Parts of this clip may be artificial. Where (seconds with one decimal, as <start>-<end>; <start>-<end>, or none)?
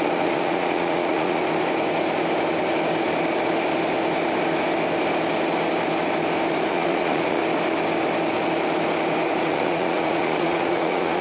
0.0-1.4; 6.7-7.4; 9.4-11.2